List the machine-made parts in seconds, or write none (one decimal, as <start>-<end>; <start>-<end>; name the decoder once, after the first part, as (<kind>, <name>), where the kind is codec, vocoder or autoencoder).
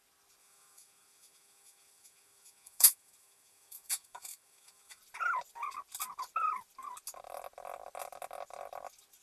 0.4-5.0 (autoencoder, DAC-VAE)